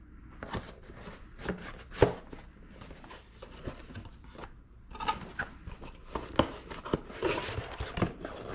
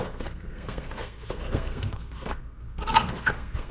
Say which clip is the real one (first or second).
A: first